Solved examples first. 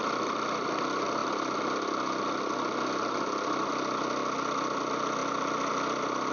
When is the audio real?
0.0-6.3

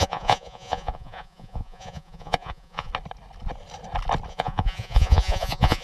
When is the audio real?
2.9-4.3